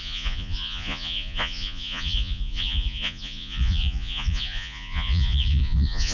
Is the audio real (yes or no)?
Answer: no